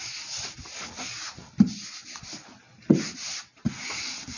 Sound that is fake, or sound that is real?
real